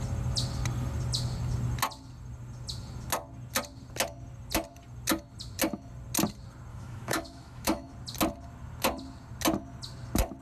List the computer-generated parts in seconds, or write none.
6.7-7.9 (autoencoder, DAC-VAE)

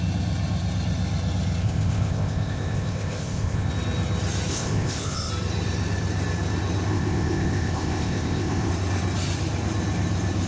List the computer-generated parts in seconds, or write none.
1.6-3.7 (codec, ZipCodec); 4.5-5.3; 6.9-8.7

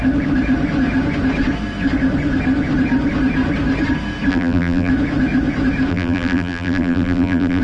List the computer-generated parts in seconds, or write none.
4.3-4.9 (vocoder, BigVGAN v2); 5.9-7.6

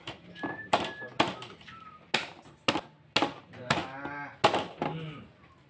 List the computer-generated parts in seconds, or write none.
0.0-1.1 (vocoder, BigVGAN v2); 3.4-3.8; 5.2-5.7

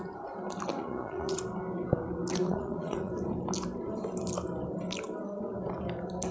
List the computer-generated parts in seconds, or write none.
0.7-1.4 (vocoder, Vocos); 2.4-3.1

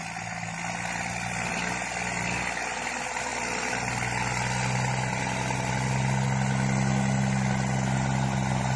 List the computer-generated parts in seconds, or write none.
none

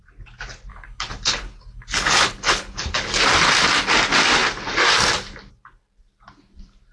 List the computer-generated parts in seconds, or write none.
0.7-3.2 (codec, HILCodec)

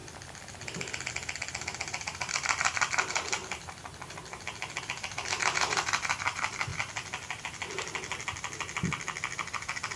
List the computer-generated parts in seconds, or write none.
none